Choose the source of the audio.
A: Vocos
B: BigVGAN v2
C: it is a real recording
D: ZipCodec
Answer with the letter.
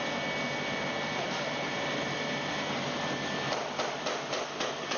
C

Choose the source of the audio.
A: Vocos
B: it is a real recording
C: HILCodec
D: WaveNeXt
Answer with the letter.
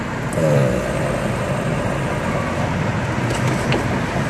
B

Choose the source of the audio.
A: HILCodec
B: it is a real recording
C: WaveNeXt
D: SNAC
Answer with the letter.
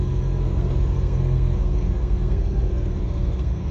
D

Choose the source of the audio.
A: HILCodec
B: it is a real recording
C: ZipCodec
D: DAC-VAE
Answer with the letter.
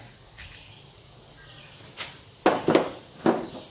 B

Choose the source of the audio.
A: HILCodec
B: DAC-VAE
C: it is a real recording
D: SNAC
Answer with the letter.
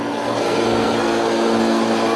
D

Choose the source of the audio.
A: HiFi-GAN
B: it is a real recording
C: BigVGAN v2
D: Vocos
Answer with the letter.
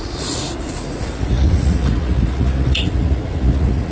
D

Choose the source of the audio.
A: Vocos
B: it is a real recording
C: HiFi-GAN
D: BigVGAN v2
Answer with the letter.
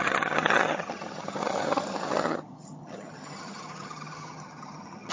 C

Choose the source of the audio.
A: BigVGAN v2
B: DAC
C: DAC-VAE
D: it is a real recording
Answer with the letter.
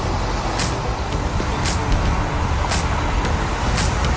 D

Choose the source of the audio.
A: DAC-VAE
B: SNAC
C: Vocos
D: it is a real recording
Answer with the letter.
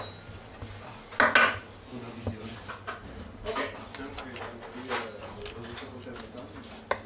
D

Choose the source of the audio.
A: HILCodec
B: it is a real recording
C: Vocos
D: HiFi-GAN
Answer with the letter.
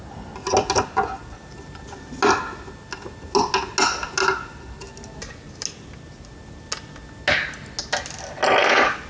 B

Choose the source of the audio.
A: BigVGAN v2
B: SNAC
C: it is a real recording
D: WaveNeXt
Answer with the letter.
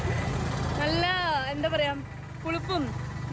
C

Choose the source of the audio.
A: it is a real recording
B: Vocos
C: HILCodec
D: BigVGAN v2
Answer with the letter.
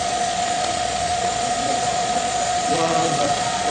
B